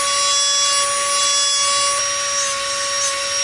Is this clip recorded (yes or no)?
yes